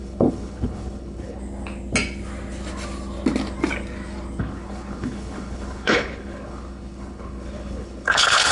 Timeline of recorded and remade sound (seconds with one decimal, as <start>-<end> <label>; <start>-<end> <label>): 0.0-1.4 remade; 1.4-4.4 recorded; 4.4-8.5 remade

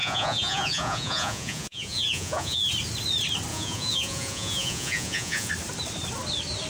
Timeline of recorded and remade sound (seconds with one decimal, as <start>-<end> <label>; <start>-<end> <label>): 0.0-2.7 remade; 2.7-3.5 recorded; 3.5-5.5 remade; 5.5-6.7 recorded

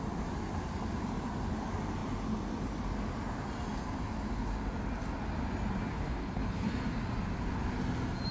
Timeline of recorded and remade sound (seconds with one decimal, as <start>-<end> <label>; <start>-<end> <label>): 0.0-5.9 recorded; 5.9-6.7 remade; 6.7-8.3 recorded

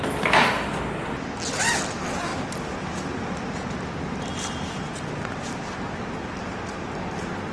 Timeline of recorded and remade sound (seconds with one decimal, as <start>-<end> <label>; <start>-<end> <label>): 0.0-7.5 recorded

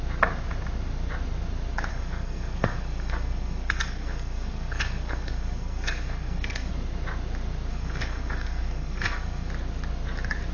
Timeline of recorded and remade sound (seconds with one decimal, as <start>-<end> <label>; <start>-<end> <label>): 0.0-1.9 recorded; 1.9-6.7 remade; 6.7-7.7 recorded; 7.7-9.5 remade; 9.5-10.5 recorded

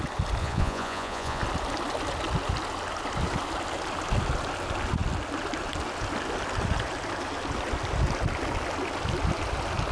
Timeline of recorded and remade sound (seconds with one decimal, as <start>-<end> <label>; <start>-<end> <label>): 0.0-0.4 recorded; 0.4-1.4 remade; 1.4-9.9 recorded